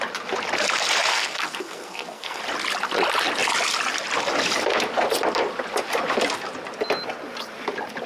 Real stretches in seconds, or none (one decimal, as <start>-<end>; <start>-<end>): 0.0-1.1; 2.4-8.1